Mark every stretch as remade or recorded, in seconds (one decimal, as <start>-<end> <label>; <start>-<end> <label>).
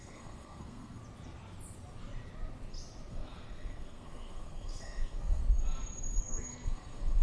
0.0-1.0 remade; 1.0-3.1 recorded; 3.1-5.4 remade; 5.4-6.2 recorded; 6.2-7.2 remade